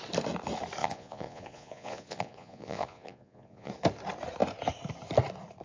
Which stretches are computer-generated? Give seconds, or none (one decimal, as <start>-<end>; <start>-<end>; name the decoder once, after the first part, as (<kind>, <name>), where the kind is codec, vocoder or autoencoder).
0.8-3.7 (vocoder, Vocos)